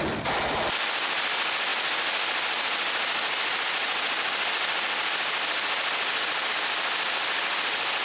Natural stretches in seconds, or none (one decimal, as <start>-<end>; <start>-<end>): 0.0-8.0